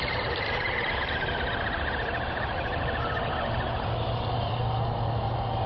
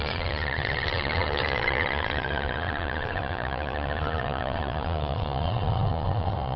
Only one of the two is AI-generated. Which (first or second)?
second